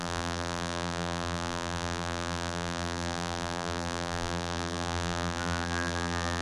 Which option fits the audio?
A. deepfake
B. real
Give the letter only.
A